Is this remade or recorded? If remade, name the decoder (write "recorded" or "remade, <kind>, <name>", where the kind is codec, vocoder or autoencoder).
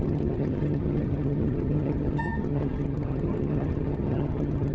remade, vocoder, HiFi-GAN